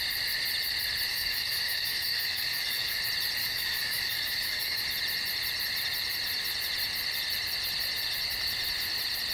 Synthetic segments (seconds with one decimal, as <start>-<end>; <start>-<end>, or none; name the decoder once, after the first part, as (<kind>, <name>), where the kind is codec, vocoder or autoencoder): 1.1-3.0 (codec, DAC); 3.4-4.8